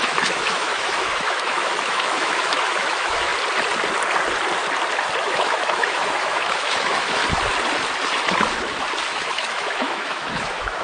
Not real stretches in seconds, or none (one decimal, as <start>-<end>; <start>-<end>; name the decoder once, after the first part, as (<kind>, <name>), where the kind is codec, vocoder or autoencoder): 0.0-3.3 (autoencoder, DAC-VAE); 5.2-7.2; 9.1-10.8